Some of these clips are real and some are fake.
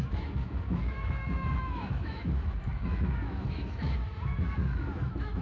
fake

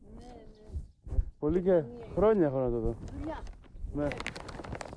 real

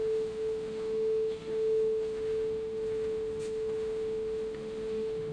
fake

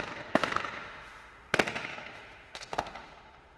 fake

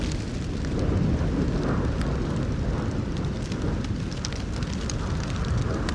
real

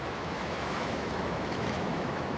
fake